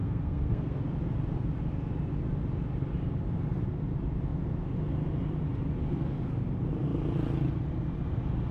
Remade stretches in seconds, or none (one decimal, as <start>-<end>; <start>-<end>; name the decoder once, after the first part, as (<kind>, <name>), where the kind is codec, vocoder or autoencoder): 0.0-0.8 (codec, SNAC)